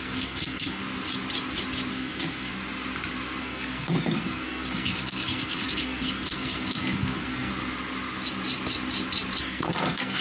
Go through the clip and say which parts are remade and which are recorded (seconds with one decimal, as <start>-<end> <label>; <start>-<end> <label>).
0.0-0.8 remade; 0.8-1.9 recorded; 1.9-2.5 remade; 2.5-3.4 recorded; 3.4-7.5 remade; 7.5-9.4 recorded; 9.4-10.2 remade